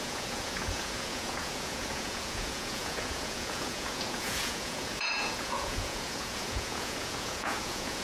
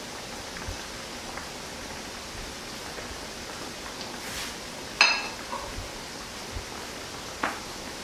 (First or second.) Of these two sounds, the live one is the second